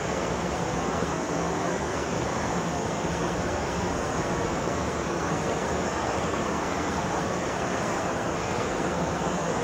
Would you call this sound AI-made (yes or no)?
yes